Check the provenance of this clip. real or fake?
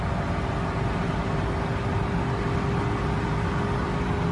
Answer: real